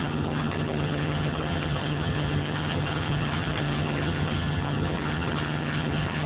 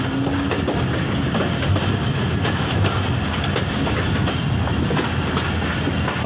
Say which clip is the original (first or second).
second